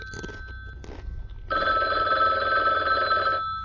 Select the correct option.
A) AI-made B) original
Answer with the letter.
B